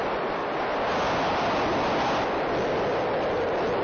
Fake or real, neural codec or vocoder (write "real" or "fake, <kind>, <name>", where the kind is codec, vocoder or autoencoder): real